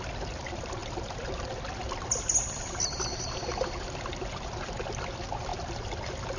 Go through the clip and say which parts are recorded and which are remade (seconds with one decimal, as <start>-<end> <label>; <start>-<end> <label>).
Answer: 0.0-6.4 recorded